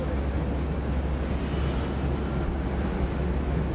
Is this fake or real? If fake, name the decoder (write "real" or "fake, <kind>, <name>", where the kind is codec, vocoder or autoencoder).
real